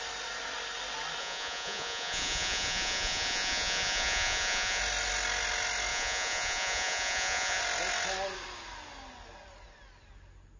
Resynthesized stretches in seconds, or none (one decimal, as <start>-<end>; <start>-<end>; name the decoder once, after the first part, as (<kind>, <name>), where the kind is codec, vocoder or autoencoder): 1.2-4.8 (vocoder, Vocos); 5.9-7.6